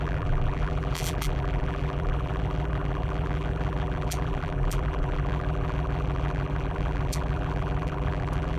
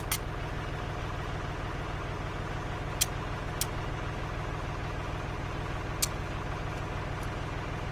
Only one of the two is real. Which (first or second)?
second